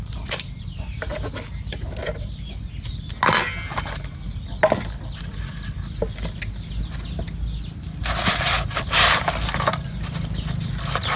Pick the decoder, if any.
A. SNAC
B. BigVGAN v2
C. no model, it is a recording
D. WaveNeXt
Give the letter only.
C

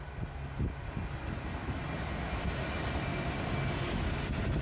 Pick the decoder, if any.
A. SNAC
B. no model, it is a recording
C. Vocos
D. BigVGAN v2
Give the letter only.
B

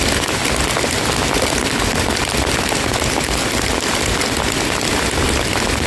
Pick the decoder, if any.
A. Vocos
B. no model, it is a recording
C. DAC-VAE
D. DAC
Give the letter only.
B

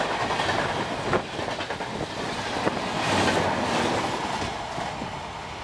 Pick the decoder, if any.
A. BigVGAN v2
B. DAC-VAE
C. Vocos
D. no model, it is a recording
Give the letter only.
D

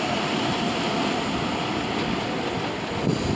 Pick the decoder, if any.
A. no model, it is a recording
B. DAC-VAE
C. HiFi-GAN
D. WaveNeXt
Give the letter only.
A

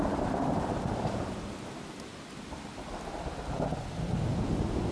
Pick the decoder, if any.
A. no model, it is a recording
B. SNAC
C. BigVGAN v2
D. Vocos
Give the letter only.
A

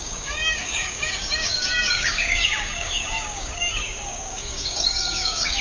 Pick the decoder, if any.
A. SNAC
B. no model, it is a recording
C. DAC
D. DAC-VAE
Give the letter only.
C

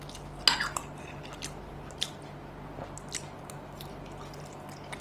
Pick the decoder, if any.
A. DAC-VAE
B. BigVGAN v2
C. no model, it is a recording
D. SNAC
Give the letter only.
C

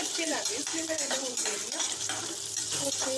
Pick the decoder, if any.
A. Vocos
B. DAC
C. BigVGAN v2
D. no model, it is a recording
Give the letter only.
C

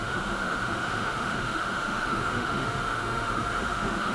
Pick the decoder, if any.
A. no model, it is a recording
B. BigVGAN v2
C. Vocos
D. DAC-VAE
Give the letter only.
D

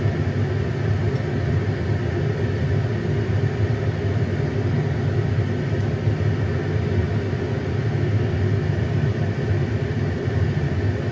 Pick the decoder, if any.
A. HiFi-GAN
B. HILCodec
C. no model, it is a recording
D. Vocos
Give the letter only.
C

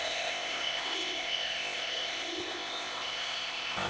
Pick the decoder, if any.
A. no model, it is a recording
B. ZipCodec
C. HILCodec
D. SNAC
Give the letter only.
B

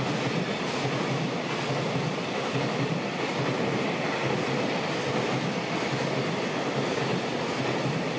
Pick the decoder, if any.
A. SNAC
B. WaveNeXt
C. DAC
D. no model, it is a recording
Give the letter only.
D